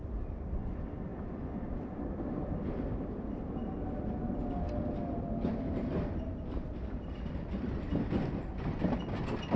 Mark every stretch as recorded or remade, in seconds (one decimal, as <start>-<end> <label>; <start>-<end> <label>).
0.0-0.6 remade; 0.6-9.6 recorded